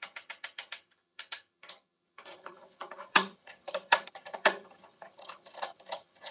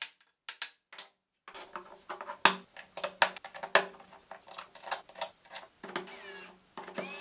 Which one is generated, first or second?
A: first